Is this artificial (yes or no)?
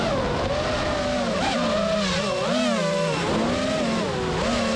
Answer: no